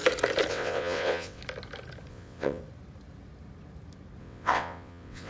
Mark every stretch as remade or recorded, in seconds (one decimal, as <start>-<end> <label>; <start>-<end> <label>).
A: 0.0-0.5 recorded; 0.5-1.4 remade; 1.4-2.1 recorded; 2.1-2.6 remade; 2.6-4.2 recorded; 4.2-5.3 remade